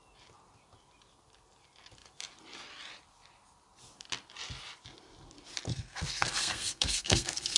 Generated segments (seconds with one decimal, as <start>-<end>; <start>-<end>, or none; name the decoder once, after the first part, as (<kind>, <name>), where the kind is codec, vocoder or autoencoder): 5.7-7.6 (codec, SNAC)